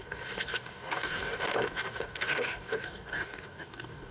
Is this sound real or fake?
fake